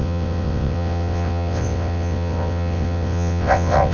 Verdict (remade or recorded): remade